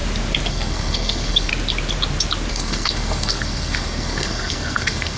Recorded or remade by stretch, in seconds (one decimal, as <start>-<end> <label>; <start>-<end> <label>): 0.0-0.5 recorded; 0.5-1.5 remade; 1.5-2.5 recorded; 2.5-5.2 remade